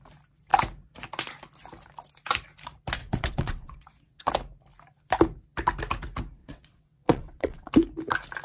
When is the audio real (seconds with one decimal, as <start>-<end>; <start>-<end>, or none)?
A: 0.0-3.0; 4.3-6.4; 7.7-8.4